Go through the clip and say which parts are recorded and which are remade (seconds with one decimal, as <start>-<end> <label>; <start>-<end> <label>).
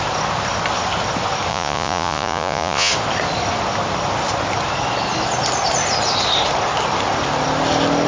0.0-1.5 recorded; 1.5-2.9 remade; 2.9-8.1 recorded